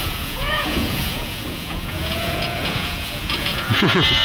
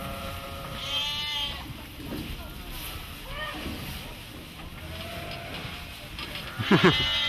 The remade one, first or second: first